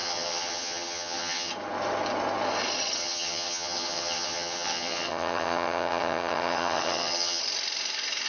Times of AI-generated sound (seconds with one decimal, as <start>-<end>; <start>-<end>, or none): 0.0-1.5; 3.0-7.4